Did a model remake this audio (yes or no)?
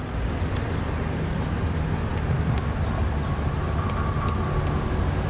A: no